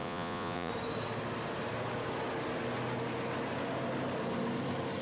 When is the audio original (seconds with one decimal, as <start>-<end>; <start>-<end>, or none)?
0.7-5.0